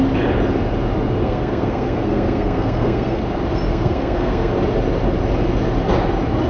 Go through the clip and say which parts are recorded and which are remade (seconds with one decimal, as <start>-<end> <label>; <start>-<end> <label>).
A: 0.0-1.2 recorded; 1.2-3.2 remade; 3.2-3.7 recorded; 3.7-4.5 remade; 4.5-6.5 recorded